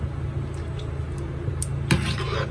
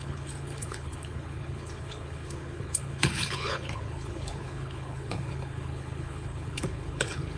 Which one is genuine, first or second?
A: first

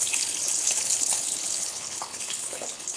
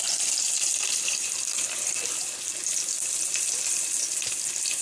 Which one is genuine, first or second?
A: second